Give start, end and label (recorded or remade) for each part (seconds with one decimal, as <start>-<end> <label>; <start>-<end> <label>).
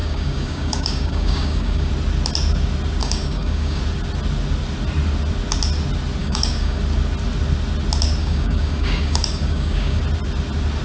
0.0-1.9 remade; 1.9-3.0 recorded; 3.0-3.8 remade; 3.8-6.2 recorded; 6.2-6.8 remade; 6.8-8.2 recorded; 8.2-10.0 remade; 10.0-10.8 recorded